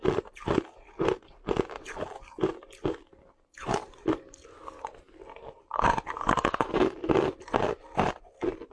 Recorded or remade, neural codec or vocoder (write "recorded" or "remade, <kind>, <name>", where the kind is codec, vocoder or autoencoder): recorded